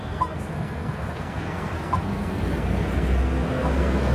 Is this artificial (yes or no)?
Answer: yes